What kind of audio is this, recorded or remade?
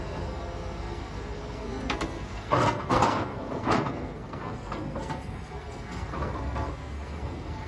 remade